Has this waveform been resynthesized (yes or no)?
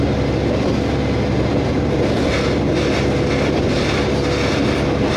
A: no